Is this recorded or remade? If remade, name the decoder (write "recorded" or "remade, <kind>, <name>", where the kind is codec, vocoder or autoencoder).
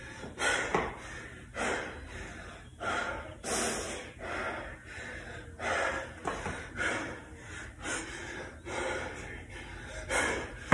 recorded